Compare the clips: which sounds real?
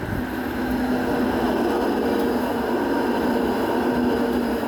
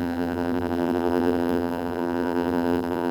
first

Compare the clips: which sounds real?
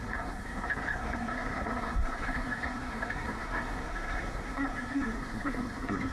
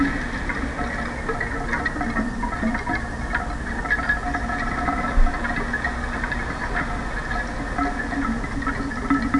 second